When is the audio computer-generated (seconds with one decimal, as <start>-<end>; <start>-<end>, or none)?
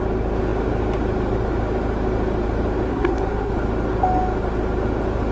2.9-3.5